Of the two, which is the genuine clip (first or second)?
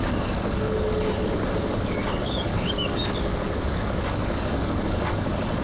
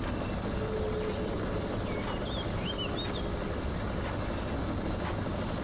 second